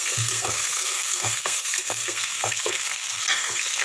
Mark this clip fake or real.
fake